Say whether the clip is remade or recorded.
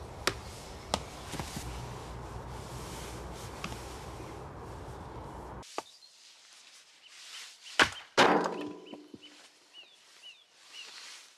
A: recorded